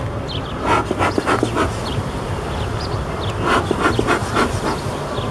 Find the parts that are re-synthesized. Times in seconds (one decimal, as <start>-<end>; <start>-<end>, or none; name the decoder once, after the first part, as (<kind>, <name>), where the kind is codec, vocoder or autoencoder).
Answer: none